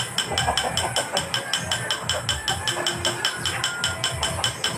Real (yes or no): yes